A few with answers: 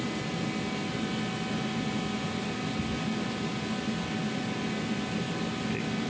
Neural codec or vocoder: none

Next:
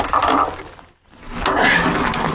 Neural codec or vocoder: none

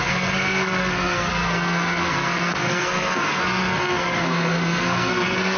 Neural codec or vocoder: codec, SNAC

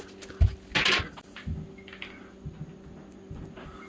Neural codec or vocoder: none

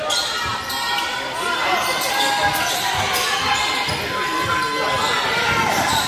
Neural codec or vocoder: none